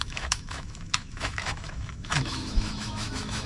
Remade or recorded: remade